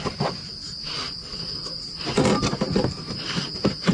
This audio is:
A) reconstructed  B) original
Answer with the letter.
A